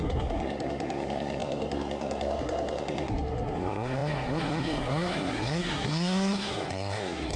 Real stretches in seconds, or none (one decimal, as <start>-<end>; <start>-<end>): none